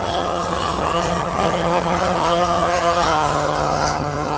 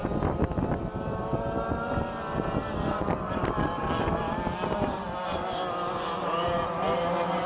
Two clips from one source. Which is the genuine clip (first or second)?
second